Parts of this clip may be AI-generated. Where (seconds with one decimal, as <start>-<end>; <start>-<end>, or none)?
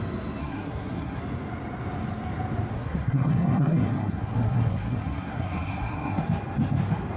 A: 0.4-1.2; 2.7-6.2